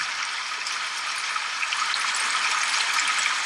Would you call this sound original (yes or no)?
yes